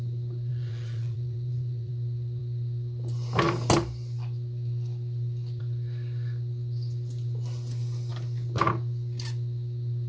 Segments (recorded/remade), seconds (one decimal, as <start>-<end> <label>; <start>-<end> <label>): 0.0-0.5 recorded; 0.5-1.9 remade; 1.9-10.1 recorded